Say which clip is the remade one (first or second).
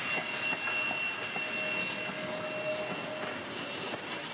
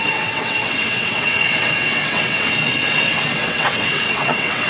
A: second